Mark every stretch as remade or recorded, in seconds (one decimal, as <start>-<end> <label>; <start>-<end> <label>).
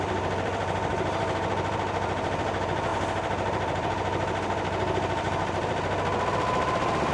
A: 0.0-7.1 remade